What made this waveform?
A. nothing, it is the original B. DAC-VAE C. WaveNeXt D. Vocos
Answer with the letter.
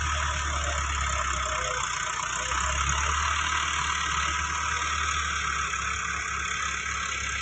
A